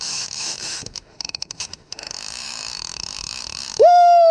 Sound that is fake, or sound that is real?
fake